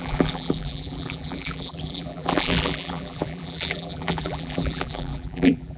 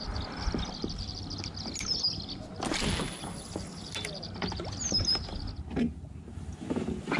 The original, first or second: second